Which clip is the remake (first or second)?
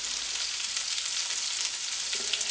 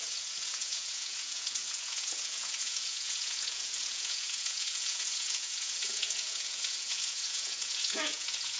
second